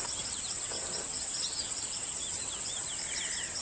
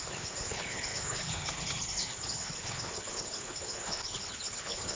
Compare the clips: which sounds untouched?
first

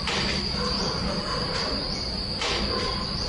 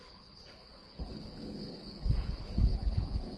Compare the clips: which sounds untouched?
first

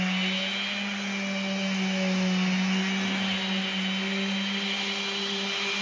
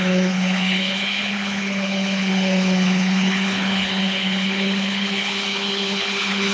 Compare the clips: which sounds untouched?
first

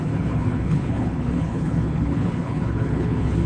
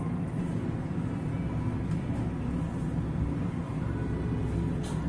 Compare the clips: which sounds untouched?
second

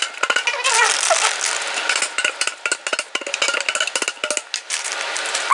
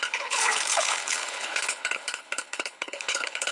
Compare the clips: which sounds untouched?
first